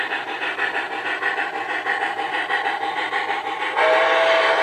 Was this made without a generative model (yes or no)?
yes